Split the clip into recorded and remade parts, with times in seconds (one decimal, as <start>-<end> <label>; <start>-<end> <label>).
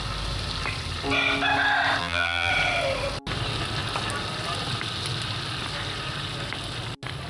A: 0.0-2.0 recorded; 2.0-2.5 remade; 2.5-7.3 recorded